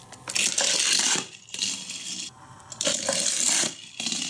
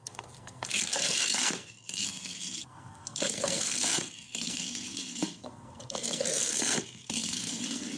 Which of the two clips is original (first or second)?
first